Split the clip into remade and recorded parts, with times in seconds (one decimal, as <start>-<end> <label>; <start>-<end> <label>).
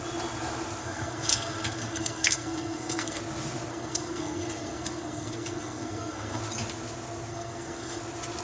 0.0-0.8 recorded; 0.8-3.2 remade; 3.2-3.7 recorded; 3.7-6.4 remade; 6.4-7.3 recorded; 7.3-8.0 remade; 8.0-8.4 recorded